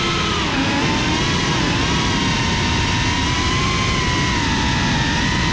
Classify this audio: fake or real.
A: real